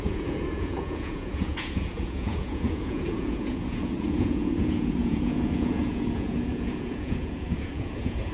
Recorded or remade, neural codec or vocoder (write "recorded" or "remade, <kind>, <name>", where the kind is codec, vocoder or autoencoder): remade, vocoder, Vocos